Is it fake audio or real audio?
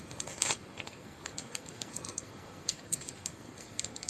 fake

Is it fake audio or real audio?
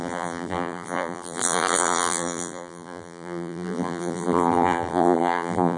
fake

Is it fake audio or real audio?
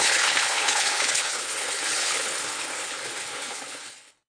fake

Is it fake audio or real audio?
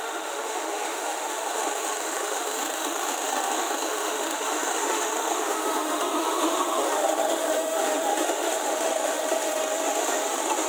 fake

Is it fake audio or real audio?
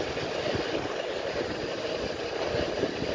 real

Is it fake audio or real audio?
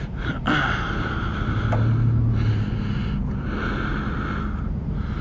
real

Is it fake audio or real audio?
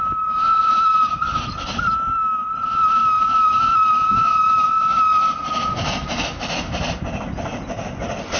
real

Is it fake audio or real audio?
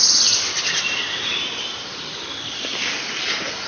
real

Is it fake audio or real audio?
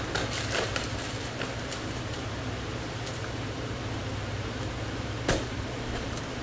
fake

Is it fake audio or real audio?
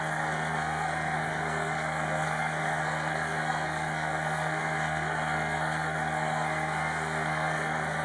fake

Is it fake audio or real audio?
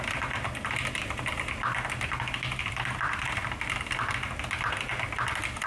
real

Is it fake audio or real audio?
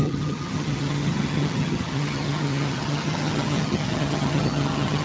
fake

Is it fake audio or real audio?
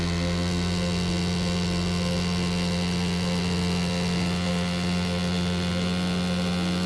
real